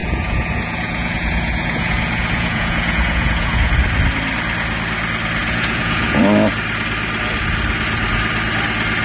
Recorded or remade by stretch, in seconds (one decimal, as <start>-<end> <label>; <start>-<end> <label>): 0.0-3.7 remade; 3.7-5.4 recorded; 5.4-6.2 remade; 6.2-9.0 recorded